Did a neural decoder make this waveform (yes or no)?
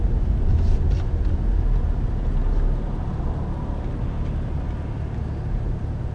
no